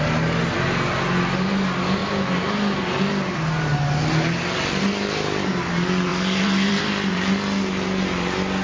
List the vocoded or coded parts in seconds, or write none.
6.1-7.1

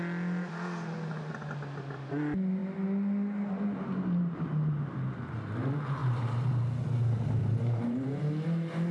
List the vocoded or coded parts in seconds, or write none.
6.0-6.5; 7.4-8.2

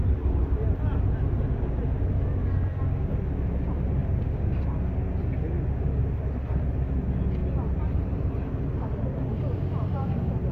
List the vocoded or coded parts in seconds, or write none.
7.4-8.6